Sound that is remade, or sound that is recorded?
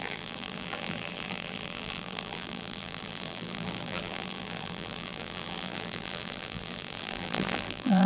remade